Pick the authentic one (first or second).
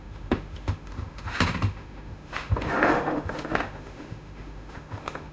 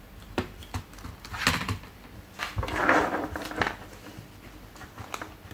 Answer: second